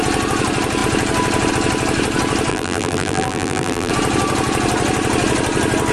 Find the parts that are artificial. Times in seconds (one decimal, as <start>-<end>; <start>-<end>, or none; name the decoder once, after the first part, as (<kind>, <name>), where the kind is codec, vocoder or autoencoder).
2.5-3.9 (vocoder, BigVGAN v2)

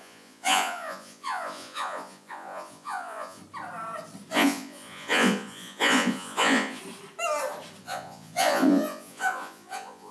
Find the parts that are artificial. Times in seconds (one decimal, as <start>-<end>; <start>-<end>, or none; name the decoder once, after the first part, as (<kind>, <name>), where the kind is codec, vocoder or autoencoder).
0.0-3.4 (vocoder, Vocos); 4.3-6.8; 7.8-10.1

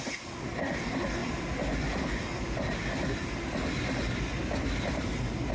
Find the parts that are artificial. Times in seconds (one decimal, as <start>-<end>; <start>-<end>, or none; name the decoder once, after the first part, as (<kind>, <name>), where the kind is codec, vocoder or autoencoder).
1.2-3.3 (vocoder, BigVGAN v2)